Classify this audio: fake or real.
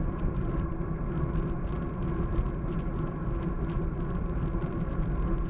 real